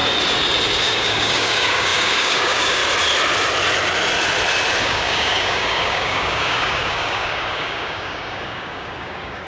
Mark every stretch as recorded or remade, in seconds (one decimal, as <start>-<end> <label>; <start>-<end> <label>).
0.0-0.8 recorded; 0.8-2.8 remade; 2.8-4.8 recorded; 4.8-9.5 remade